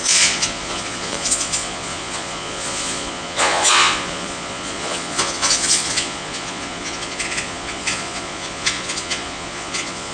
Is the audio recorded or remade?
remade